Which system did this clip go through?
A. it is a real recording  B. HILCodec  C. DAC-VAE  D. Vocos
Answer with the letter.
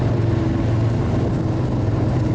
A